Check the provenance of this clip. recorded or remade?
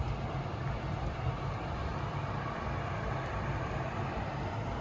remade